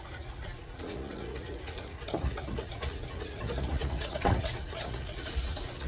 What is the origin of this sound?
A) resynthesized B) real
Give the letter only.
A